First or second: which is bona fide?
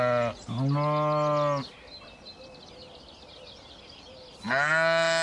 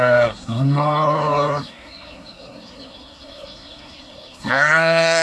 first